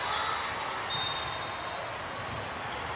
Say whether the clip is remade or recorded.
recorded